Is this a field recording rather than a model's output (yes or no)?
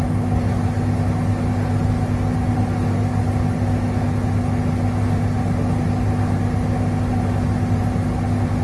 yes